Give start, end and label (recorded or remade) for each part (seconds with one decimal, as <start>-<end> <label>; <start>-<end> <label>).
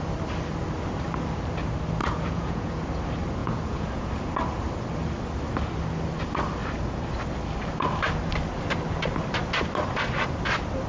0.0-2.0 recorded; 2.0-2.8 remade; 2.8-3.4 recorded; 3.4-4.1 remade; 4.1-10.9 recorded